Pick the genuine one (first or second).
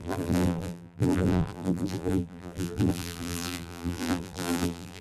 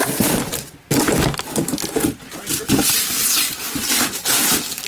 second